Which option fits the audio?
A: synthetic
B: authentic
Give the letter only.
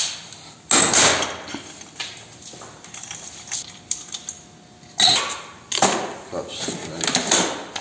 B